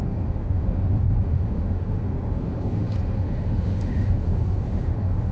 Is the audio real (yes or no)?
no